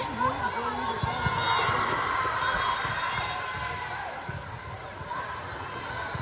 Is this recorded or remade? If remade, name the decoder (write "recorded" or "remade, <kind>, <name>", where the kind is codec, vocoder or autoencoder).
recorded